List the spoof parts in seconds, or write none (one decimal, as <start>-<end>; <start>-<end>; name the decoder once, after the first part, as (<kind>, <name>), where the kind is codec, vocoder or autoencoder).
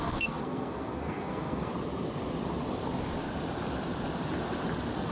0.0-1.7 (codec, SNAC)